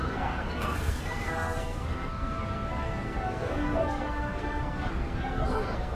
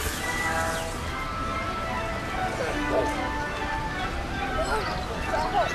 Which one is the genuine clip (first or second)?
second